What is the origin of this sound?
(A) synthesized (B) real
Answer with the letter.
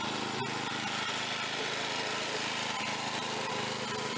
B